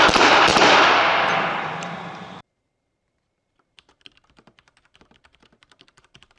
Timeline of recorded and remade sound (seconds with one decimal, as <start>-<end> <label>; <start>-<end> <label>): 0.0-6.4 remade

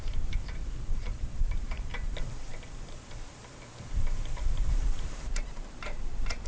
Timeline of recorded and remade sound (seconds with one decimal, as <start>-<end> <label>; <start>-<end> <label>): 0.0-2.5 remade; 2.5-4.7 recorded; 4.7-6.5 remade